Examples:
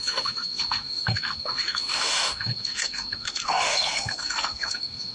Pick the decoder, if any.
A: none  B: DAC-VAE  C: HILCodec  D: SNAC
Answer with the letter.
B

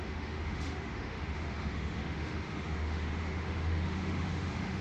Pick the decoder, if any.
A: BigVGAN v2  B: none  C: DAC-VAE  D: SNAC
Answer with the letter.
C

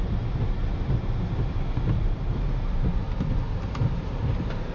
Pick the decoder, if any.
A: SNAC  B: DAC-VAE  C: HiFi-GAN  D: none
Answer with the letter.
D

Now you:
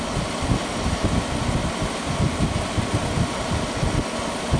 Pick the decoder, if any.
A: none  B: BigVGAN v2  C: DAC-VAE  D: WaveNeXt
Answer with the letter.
A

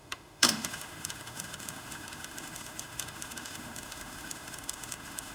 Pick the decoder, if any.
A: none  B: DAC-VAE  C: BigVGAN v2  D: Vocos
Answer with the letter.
B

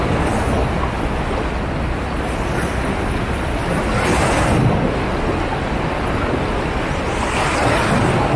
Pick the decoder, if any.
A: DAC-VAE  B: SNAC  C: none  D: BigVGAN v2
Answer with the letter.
C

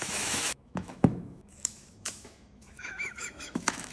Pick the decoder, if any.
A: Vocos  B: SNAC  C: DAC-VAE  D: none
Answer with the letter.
C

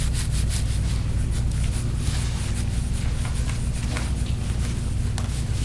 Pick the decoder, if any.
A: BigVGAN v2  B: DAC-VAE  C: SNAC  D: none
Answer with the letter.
D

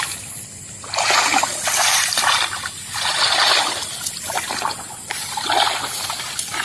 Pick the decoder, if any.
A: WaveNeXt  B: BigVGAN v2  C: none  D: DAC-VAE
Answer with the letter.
C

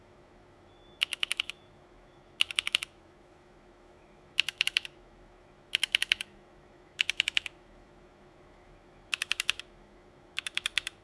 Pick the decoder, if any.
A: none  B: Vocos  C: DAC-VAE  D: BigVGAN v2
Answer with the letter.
C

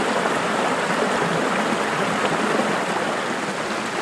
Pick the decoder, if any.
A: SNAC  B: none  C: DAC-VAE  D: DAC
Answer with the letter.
B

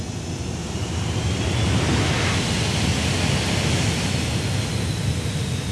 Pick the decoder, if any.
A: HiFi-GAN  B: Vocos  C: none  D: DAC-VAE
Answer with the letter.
C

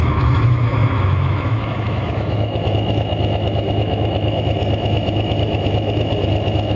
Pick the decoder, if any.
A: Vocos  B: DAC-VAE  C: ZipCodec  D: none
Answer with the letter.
B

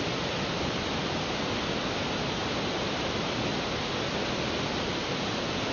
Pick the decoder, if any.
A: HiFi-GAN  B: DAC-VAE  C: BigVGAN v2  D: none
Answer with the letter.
D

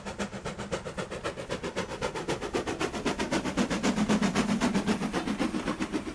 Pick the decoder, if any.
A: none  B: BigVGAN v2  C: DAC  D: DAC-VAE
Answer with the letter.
A